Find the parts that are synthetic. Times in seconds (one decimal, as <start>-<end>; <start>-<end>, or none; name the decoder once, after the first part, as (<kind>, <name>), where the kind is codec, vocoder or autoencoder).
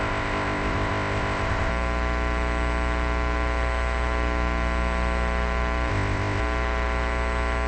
0.0-1.7 (codec, ZipCodec); 5.9-6.4